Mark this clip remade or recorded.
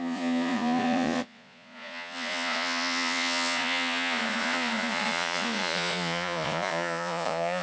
remade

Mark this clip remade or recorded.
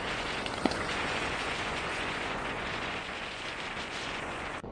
remade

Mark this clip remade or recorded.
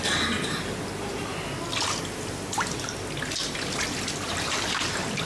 recorded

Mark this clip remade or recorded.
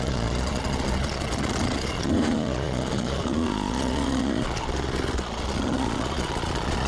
remade